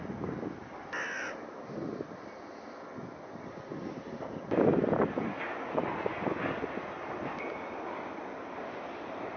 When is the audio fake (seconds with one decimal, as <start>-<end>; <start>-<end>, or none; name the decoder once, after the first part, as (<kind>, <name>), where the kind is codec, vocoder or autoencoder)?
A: none